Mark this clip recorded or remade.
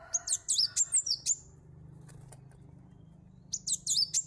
recorded